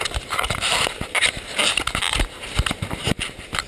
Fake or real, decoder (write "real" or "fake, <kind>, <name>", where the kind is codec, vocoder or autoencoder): fake, vocoder, BigVGAN v2